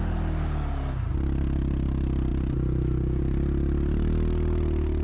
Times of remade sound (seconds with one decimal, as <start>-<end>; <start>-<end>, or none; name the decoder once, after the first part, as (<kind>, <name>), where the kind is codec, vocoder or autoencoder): none